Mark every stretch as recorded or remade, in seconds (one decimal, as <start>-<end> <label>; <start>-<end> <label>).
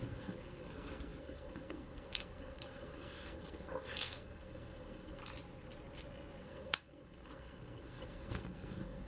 0.0-5.2 remade; 5.2-6.4 recorded; 6.4-9.1 remade